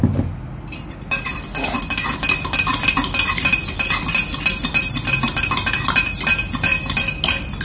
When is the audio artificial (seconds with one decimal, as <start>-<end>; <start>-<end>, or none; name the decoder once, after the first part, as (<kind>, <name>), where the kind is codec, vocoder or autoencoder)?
none

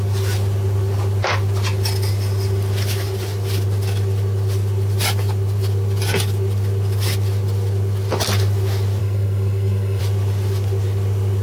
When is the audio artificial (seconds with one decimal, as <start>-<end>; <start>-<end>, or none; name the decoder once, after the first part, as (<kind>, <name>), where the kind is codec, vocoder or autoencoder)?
9.0-10.0 (codec, SNAC)

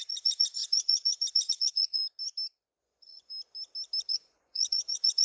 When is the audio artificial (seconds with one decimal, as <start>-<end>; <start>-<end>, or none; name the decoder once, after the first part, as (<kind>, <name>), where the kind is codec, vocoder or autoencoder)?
0.0-2.0 (vocoder, Vocos); 2.8-3.3; 4.1-5.2

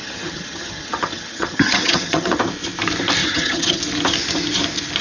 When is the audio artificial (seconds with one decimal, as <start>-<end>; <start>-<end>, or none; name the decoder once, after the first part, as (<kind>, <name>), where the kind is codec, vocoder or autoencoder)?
0.0-2.4 (vocoder, HiFi-GAN); 3.2-3.8

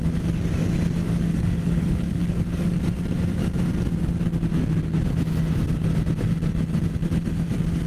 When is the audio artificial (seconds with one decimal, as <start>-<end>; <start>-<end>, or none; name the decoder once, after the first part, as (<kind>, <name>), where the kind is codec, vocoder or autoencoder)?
1.0-2.7 (codec, DAC)

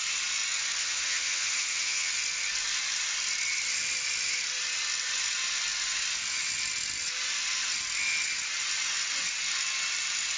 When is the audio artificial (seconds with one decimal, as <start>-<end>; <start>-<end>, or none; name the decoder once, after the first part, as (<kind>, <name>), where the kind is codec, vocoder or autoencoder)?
0.8-2.1 (vocoder, HiFi-GAN)

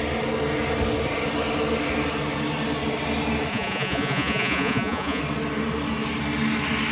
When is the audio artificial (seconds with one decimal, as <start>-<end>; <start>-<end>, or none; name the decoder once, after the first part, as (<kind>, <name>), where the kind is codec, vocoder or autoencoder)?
3.5-5.2 (vocoder, Vocos)

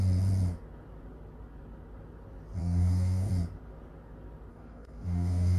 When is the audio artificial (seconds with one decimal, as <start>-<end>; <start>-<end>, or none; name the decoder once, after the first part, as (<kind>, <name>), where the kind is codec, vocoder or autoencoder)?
2.6-3.3 (codec, DAC); 4.5-5.6